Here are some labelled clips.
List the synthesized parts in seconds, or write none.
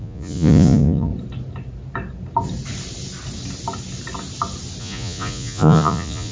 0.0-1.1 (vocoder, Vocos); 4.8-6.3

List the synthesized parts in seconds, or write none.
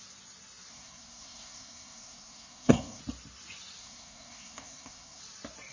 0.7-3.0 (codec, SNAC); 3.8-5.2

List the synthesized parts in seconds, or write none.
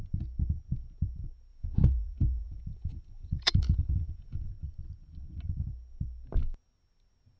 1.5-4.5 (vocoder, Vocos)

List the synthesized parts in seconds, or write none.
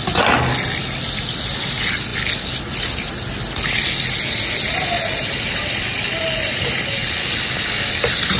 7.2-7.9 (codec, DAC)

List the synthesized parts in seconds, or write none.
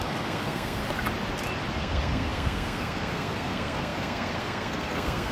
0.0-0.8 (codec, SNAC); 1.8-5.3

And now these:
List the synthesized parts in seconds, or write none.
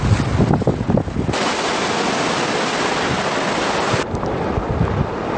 none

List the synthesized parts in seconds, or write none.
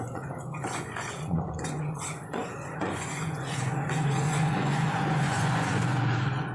0.0-6.5 (vocoder, Vocos)